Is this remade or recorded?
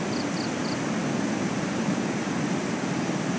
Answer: recorded